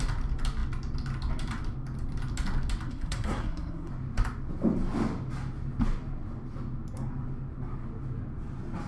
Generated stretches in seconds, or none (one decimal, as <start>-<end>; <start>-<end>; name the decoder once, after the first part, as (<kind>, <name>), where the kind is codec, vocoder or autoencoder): 2.9-3.9 (codec, SNAC)